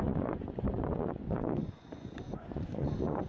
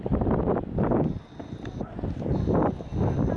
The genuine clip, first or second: second